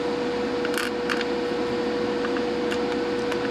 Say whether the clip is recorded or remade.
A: recorded